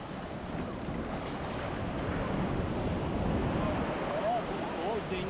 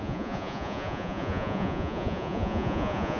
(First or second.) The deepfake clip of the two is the second